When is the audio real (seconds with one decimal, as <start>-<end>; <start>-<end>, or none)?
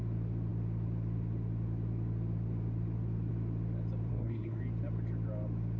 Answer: 0.0-4.1; 4.6-5.8